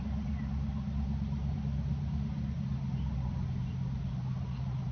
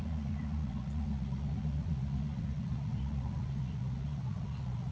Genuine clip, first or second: first